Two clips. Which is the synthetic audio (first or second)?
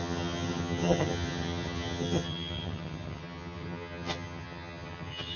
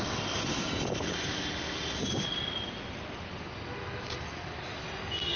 first